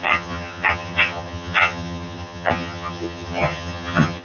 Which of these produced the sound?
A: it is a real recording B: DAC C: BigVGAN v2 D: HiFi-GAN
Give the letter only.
D